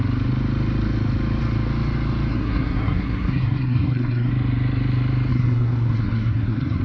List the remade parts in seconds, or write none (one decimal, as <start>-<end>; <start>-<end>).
2.3-4.3; 5.3-6.8